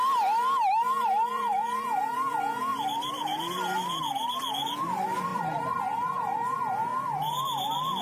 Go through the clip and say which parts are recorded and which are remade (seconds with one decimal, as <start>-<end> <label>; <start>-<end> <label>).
0.0-6.9 remade; 6.9-8.0 recorded